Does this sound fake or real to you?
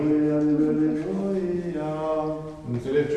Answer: real